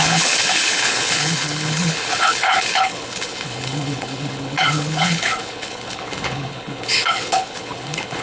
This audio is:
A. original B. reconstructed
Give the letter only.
B